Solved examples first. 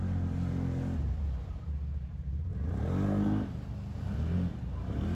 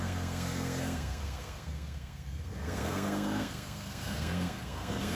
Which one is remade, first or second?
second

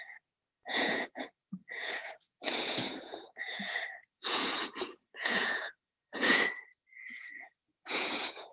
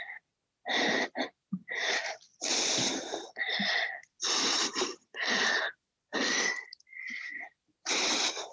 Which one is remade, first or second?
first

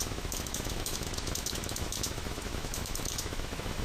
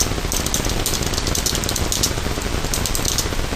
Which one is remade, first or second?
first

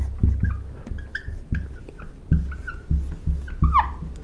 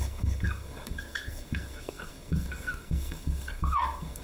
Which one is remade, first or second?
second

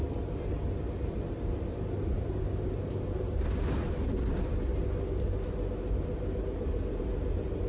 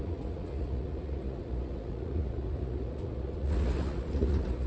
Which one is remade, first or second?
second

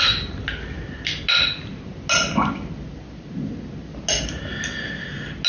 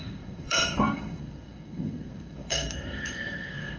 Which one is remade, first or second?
second